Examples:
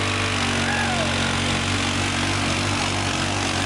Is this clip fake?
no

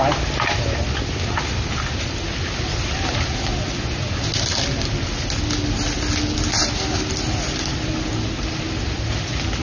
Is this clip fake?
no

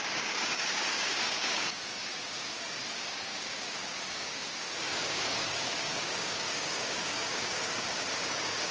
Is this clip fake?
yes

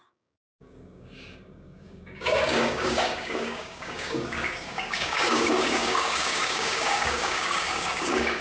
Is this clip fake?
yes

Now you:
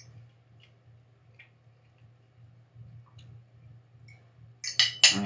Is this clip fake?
no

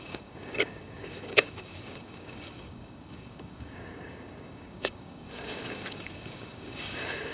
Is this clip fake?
yes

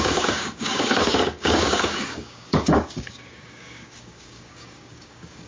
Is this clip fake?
yes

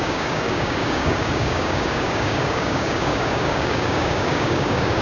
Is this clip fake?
yes